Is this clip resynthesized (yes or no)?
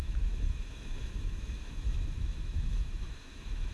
yes